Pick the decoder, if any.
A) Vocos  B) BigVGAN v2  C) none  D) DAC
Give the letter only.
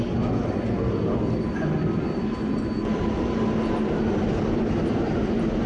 C